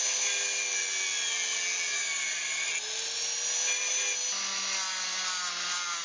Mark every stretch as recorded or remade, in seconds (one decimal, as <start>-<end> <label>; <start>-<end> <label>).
0.0-6.0 recorded